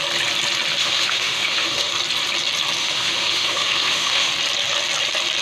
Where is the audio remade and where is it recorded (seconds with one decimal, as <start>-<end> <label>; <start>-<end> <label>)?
0.0-0.8 recorded; 0.8-1.9 remade; 1.9-2.8 recorded; 2.8-4.3 remade; 4.3-5.4 recorded